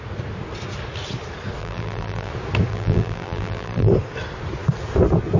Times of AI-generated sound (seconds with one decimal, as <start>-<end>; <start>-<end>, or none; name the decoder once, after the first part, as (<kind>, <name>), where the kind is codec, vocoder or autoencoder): 1.6-2.3 (vocoder, BigVGAN v2); 2.7-3.9